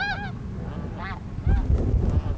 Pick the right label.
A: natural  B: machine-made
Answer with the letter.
A